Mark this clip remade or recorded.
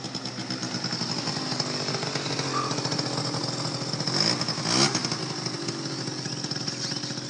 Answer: recorded